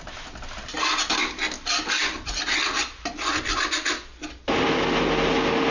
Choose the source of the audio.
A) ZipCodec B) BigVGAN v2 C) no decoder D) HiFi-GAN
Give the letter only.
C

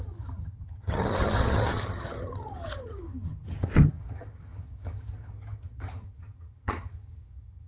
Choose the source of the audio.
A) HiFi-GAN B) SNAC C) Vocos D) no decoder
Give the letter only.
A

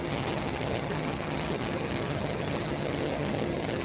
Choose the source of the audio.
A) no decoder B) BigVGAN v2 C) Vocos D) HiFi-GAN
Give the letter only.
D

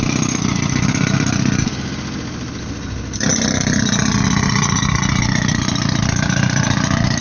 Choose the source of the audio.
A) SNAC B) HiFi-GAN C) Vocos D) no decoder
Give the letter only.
D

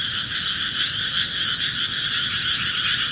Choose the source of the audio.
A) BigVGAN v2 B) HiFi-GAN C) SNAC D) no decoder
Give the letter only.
D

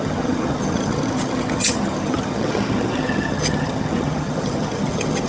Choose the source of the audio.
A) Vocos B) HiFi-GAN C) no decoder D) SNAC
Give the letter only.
B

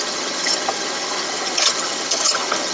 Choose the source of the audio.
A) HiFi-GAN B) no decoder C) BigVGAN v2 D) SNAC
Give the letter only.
A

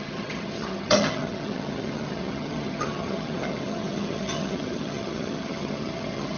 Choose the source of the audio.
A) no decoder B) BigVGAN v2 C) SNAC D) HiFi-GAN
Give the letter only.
D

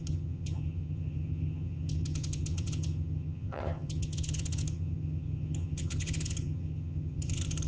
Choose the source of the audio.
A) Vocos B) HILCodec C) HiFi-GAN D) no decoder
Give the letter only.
C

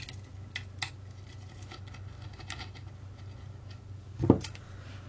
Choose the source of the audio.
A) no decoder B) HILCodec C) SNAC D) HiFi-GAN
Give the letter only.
A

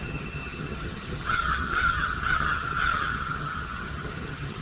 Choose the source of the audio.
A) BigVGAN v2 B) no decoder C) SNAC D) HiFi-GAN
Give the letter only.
D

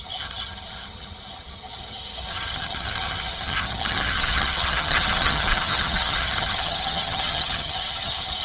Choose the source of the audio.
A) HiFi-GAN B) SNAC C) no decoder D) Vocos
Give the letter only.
A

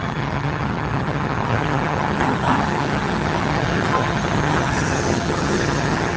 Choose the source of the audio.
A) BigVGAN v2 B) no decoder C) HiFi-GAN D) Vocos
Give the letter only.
C